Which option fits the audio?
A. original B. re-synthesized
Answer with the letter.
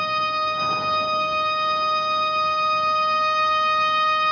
B